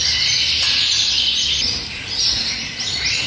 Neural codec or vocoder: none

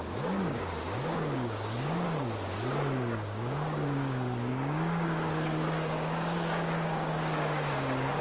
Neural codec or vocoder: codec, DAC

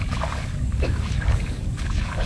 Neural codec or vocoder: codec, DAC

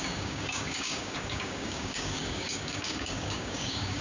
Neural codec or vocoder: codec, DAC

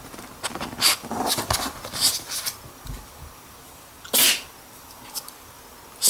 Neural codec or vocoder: none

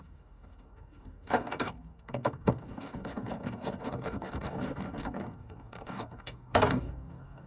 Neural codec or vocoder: codec, DAC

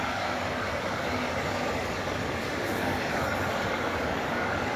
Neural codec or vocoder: codec, DAC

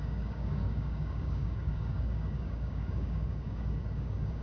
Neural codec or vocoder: codec, DAC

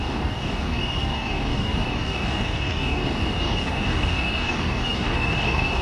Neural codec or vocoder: codec, DAC